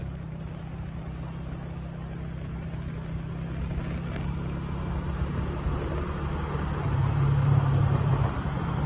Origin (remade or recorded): recorded